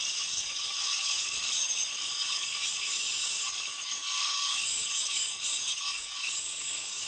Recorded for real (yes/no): no